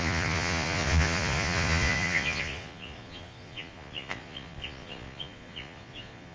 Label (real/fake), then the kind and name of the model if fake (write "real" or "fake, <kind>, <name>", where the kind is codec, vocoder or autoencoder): fake, vocoder, Vocos